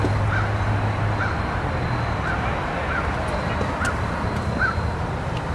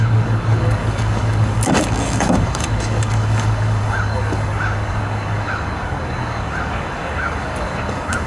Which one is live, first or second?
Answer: first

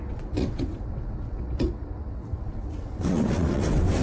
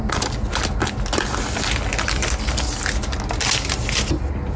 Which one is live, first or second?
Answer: second